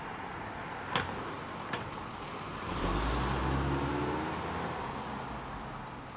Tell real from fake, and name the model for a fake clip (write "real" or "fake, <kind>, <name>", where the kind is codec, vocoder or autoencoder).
real